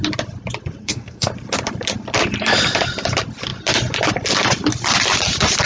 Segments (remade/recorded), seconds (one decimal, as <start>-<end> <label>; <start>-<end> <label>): 0.0-0.8 recorded; 0.8-1.3 remade; 1.3-5.7 recorded